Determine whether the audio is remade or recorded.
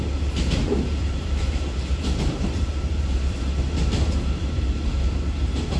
remade